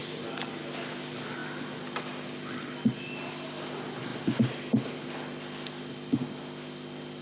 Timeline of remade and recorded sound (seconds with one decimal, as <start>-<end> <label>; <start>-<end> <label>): 0.0-0.6 remade; 0.6-7.2 recorded